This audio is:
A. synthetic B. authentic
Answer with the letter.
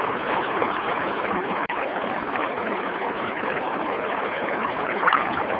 A